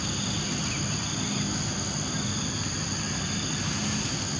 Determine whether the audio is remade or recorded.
recorded